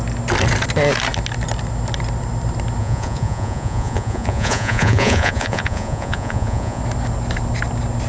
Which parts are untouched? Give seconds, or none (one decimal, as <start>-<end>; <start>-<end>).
0.0-2.8; 6.8-8.1